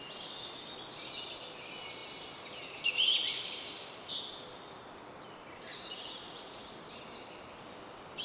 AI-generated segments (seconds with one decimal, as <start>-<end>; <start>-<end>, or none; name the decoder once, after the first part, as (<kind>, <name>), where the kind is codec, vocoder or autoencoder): 5.7-6.6 (vocoder, Vocos)